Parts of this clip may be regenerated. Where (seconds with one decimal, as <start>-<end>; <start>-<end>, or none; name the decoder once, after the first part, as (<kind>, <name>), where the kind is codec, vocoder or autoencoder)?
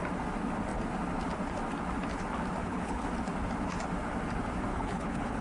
2.6-3.1 (codec, HILCodec); 4.7-5.4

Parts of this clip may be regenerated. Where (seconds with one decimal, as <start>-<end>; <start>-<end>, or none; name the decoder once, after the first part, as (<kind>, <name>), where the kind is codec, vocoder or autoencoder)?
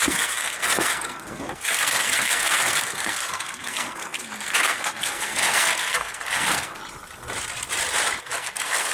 0.0-6.8 (codec, SNAC); 8.2-8.9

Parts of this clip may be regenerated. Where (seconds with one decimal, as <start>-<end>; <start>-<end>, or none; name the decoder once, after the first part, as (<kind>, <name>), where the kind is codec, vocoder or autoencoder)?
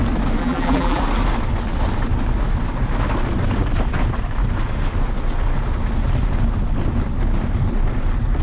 0.4-1.0 (vocoder, BigVGAN v2)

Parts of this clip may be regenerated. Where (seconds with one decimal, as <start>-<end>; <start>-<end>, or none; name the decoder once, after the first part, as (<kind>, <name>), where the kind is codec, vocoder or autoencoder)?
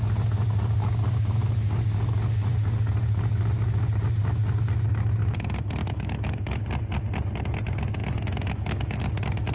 5.8-6.6 (autoencoder, DAC-VAE); 8.0-9.0